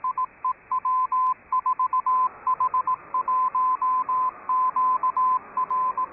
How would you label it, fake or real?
real